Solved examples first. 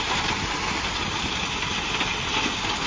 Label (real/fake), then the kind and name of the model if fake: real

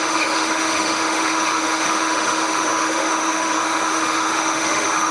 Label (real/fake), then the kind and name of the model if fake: fake, autoencoder, DAC-VAE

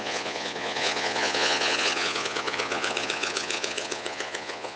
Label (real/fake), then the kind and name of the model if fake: fake, vocoder, Vocos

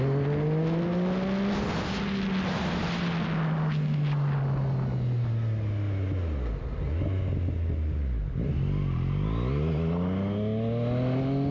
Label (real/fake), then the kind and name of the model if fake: real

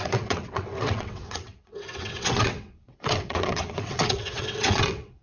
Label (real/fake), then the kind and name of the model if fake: fake, vocoder, WaveNeXt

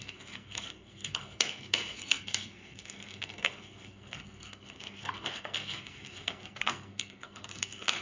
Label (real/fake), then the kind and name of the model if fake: fake, codec, SNAC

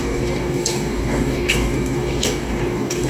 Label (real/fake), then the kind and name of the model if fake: fake, codec, DAC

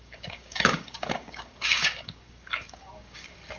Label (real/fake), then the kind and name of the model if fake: fake, codec, DAC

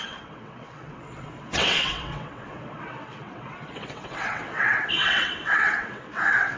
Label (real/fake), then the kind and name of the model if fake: fake, vocoder, WaveNeXt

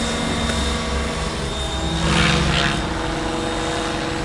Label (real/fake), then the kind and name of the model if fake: real